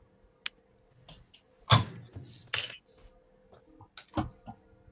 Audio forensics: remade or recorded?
recorded